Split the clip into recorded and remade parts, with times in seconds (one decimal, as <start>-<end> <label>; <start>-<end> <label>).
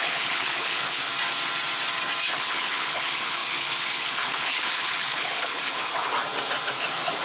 0.0-1.1 remade; 1.1-2.3 recorded; 2.3-6.1 remade; 6.1-6.7 recorded; 6.7-7.2 remade